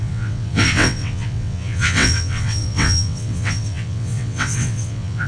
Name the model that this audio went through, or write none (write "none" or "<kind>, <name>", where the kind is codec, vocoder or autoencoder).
vocoder, WaveNeXt